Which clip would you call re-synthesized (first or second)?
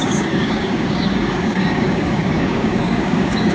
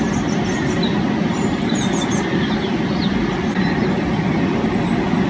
first